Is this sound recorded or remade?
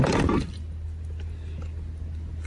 recorded